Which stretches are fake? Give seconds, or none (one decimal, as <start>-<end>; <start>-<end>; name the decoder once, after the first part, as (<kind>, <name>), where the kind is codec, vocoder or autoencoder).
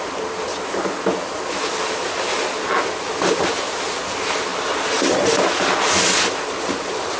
none